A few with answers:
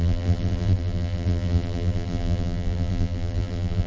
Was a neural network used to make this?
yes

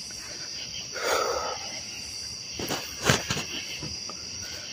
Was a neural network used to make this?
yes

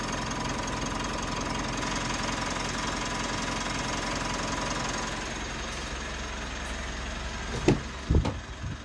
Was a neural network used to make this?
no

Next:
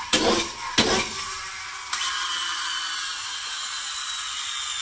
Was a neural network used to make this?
no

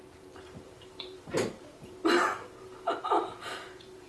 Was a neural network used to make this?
yes